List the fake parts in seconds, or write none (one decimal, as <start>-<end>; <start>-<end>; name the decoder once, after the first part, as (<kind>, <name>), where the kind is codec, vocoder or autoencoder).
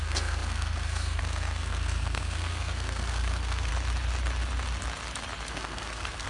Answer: 0.0-3.7 (codec, SNAC); 5.5-6.3